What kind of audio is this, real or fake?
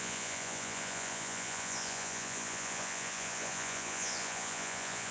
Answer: fake